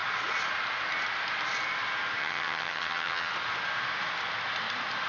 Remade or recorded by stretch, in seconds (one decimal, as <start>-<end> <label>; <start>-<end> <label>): 0.0-2.2 recorded; 2.2-3.3 remade; 3.3-5.1 recorded